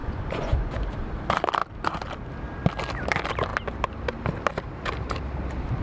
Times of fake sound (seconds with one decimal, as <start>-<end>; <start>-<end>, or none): 0.0-0.8